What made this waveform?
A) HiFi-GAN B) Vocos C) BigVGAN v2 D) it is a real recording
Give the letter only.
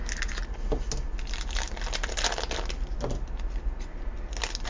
D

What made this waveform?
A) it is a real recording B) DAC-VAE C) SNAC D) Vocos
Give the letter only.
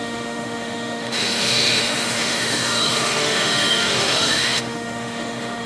B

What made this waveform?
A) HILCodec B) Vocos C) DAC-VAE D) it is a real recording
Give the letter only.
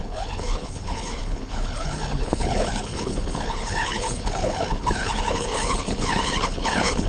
A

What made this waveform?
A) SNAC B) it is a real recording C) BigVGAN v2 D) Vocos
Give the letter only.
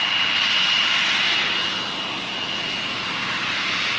B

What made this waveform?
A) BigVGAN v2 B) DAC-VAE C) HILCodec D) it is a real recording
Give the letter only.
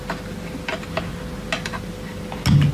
D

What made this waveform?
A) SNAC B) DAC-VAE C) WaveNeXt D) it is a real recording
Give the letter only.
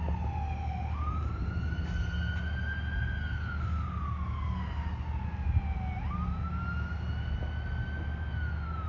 D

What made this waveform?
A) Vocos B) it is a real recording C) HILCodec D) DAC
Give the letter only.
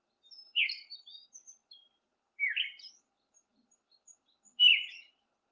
B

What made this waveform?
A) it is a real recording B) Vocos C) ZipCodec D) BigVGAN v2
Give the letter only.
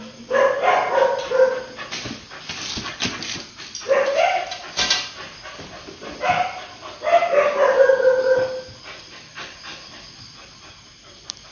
A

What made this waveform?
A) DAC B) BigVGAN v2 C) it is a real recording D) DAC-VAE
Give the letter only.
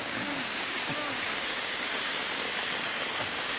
A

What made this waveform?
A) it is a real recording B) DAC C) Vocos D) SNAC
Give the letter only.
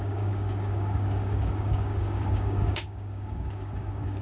B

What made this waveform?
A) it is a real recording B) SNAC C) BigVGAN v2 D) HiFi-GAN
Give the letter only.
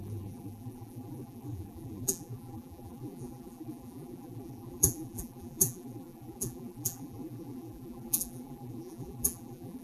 C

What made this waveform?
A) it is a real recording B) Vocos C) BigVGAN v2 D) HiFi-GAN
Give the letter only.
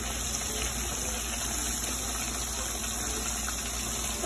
A